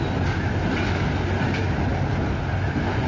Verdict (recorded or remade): recorded